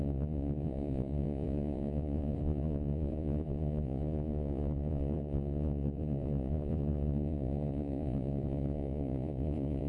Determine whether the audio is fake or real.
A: fake